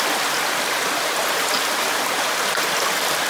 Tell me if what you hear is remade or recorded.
recorded